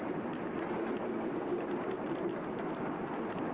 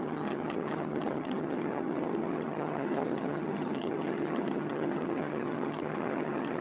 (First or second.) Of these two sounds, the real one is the first